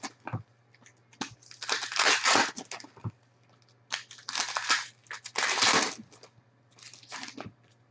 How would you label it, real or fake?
real